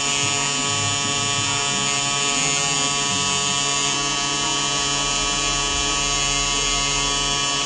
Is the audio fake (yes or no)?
no